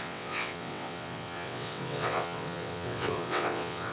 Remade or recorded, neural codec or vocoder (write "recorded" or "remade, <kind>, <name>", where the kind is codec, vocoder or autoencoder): remade, vocoder, WaveNeXt